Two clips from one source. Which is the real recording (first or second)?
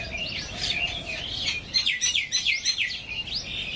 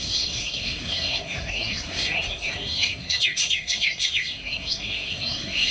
first